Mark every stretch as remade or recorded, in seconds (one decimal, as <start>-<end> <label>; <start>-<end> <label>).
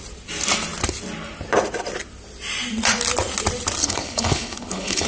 0.0-3.8 recorded; 3.8-5.1 remade